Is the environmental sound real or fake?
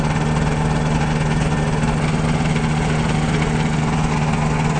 real